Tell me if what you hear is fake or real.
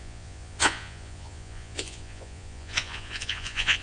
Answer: fake